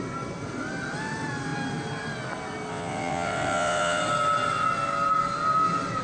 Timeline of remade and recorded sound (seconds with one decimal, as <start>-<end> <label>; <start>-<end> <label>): 0.0-2.7 recorded; 2.7-4.0 remade; 4.0-6.0 recorded